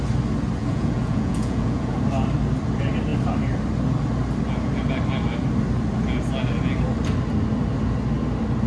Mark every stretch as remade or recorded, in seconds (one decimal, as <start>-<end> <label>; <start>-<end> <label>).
0.0-0.6 recorded; 0.6-2.0 remade; 2.0-8.7 recorded